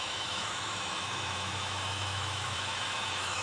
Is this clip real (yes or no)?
no